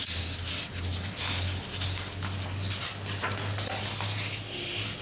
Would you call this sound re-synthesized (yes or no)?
no